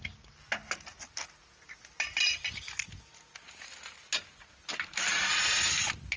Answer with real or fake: real